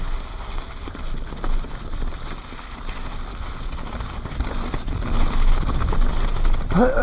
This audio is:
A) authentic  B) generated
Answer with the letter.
A